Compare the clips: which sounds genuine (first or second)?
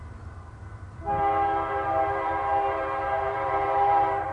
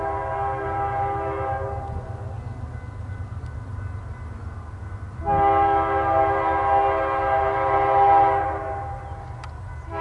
second